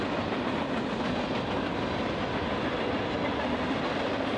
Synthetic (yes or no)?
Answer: no